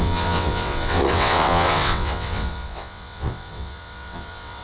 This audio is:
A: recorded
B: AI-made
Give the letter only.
B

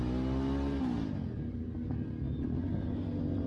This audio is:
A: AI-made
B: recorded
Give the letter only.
B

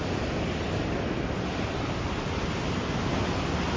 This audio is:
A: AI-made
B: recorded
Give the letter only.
B